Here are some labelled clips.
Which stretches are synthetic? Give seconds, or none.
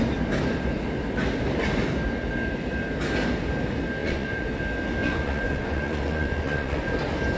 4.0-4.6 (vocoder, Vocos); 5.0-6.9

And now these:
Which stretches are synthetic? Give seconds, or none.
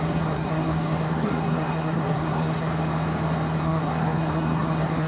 0.0-2.7 (codec, SNAC); 3.6-5.1